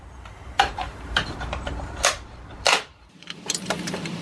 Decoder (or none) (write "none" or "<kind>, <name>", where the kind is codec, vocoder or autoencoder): vocoder, BigVGAN v2